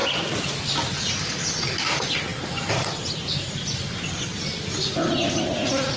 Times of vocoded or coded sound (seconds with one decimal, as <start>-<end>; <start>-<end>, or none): 0.0-1.6; 2.3-4.4